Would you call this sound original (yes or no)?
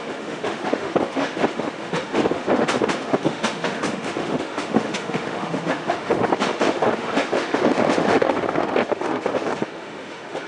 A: no